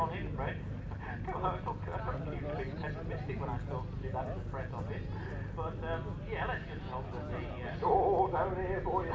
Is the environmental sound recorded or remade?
recorded